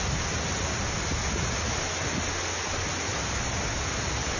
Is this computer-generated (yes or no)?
no